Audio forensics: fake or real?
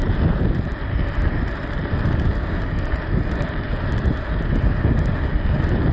real